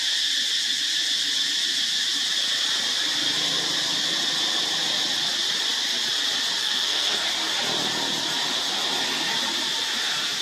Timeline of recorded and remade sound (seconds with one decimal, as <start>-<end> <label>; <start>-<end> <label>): 0.0-6.6 recorded; 6.6-7.2 remade; 7.2-10.4 recorded